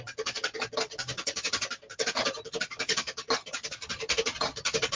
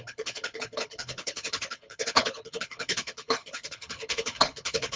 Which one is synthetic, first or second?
second